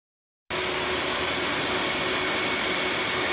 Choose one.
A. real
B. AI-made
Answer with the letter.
A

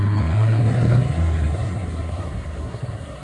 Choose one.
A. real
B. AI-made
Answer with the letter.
B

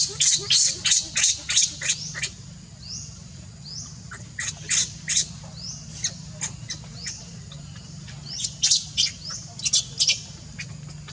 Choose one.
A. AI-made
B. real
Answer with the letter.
B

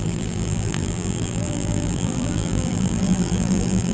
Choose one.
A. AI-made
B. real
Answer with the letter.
A